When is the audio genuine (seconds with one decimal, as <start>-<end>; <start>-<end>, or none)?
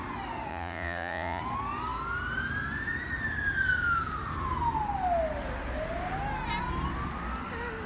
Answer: 0.0-0.5; 1.4-7.9